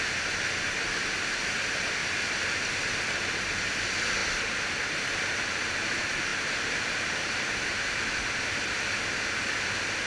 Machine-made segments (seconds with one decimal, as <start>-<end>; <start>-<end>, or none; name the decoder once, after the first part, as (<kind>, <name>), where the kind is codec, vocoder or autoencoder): none